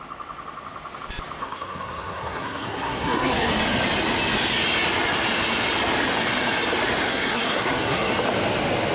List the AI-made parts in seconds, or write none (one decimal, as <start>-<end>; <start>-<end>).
1.4-3.5; 7.1-8.1